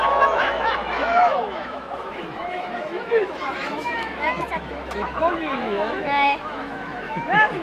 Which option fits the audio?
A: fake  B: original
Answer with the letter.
A